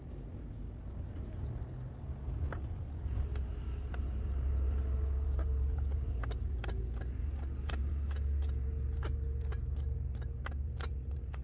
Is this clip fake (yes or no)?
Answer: no